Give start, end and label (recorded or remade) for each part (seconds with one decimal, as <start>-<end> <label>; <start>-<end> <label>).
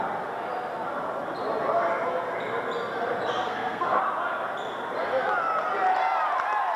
0.0-3.3 recorded; 3.3-4.0 remade; 4.0-6.8 recorded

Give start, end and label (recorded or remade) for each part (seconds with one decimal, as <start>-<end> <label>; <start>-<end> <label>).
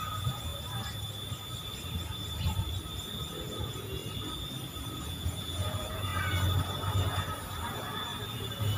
0.0-0.5 remade; 0.5-3.5 recorded; 3.5-4.0 remade; 4.0-5.0 recorded; 5.0-6.1 remade; 6.1-7.7 recorded; 7.7-8.1 remade; 8.1-8.8 recorded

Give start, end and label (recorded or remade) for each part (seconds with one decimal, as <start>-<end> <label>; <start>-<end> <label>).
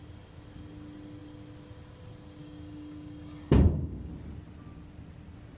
0.0-2.4 recorded; 2.4-4.1 remade; 4.1-5.6 recorded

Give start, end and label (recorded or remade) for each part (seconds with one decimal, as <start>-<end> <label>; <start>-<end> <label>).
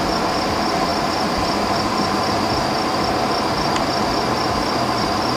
0.0-5.4 recorded